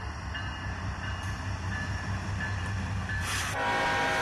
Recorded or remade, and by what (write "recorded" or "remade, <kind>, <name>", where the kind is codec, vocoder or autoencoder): recorded